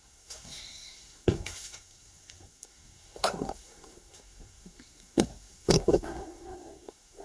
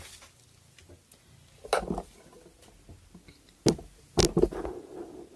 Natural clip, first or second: second